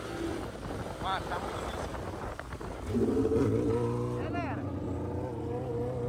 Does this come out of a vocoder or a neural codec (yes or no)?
no